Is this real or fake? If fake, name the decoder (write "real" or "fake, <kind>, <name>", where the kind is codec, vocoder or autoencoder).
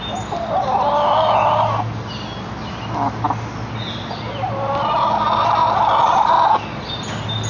real